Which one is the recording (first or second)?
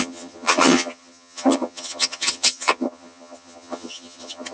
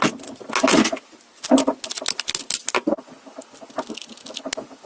second